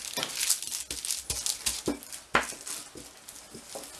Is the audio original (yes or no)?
yes